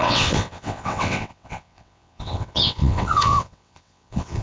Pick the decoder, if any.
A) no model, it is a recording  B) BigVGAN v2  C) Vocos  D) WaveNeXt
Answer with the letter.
D